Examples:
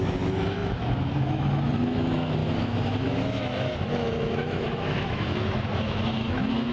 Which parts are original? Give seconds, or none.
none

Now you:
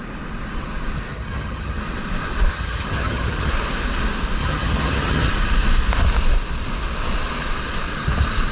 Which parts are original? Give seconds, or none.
0.0-1.1; 1.8-2.5; 3.5-4.4; 5.3-8.5

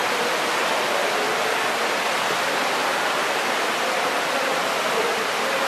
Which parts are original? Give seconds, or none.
0.0-5.7

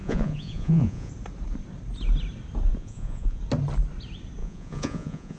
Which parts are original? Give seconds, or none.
1.1-2.8; 3.4-4.4

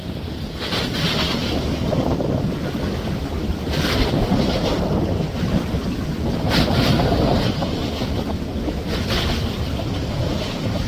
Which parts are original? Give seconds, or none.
0.0-10.9

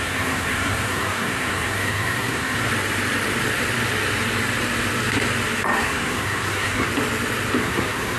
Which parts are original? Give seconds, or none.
2.7-5.8; 6.9-7.6

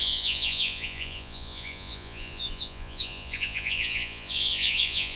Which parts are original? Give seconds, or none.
none

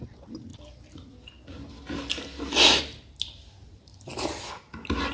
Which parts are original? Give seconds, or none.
0.0-3.6; 4.5-5.1